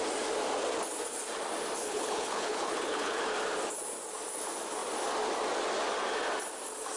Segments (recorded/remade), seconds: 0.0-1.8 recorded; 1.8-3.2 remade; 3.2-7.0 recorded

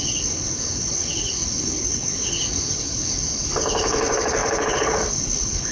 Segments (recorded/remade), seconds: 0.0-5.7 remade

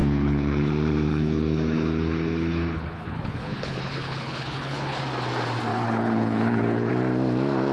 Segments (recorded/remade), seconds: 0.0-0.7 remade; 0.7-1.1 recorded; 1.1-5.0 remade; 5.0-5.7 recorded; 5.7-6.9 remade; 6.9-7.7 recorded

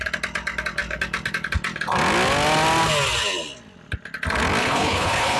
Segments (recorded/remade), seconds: 0.0-4.6 recorded; 4.6-5.4 remade